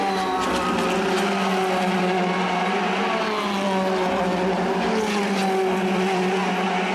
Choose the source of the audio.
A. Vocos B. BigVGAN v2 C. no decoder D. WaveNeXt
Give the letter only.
C